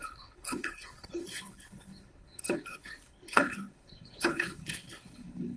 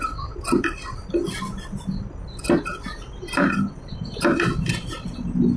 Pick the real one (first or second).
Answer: second